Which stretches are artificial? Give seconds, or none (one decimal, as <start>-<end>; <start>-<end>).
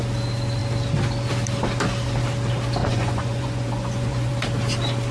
2.8-4.3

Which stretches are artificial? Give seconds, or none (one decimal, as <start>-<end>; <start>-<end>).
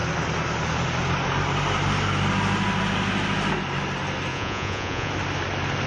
4.3-5.1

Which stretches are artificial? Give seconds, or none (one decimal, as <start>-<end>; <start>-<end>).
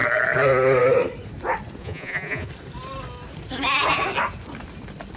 1.8-2.5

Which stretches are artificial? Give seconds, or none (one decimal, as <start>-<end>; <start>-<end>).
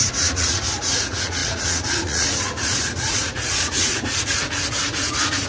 0.0-5.5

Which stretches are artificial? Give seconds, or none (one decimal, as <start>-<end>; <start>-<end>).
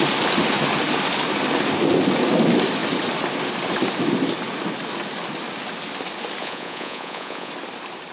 6.4-7.5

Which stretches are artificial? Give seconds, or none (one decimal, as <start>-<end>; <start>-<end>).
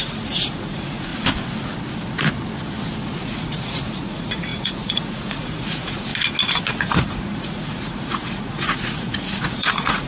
0.0-1.1; 3.2-6.1; 6.7-10.1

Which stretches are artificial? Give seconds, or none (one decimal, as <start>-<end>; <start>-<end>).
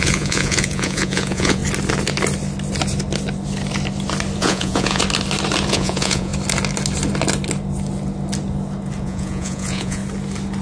0.0-1.6; 4.4-5.0; 5.7-6.3; 9.0-10.0